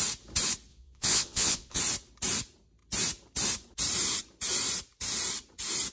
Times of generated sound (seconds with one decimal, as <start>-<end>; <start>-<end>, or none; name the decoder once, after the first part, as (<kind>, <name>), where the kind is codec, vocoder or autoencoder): 0.7-1.8 (vocoder, Vocos)